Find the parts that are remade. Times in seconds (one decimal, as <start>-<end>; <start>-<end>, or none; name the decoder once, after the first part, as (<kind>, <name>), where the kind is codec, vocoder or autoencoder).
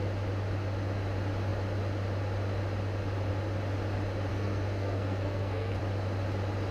4.3-5.8 (codec, SNAC)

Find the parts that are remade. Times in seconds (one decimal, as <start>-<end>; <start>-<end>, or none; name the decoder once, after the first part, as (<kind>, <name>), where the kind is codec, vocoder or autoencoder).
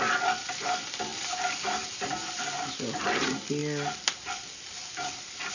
0.0-1.1 (vocoder, BigVGAN v2); 3.0-3.6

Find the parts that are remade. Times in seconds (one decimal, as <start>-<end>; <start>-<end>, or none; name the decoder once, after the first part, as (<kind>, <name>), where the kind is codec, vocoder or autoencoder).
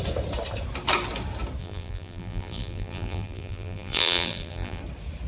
1.6-4.8 (vocoder, BigVGAN v2)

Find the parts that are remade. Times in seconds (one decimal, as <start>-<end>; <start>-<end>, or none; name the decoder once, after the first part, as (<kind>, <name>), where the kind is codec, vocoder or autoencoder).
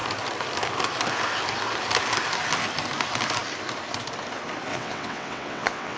4.7-6.0 (vocoder, WaveNeXt)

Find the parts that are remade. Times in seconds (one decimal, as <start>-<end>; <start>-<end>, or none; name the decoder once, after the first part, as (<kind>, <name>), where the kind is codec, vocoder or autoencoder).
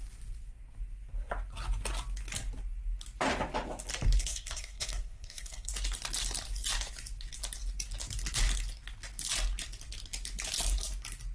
4.2-5.7 (codec, SNAC)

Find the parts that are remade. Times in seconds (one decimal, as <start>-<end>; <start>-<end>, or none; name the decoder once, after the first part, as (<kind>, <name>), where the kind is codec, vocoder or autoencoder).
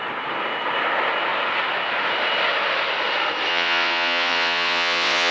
3.5-5.3 (vocoder, WaveNeXt)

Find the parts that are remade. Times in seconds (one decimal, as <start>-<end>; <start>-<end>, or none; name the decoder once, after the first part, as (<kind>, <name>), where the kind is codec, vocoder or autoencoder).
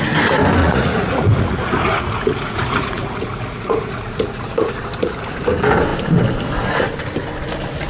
0.6-4.5 (vocoder, Vocos)